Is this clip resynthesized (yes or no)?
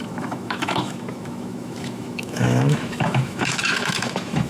yes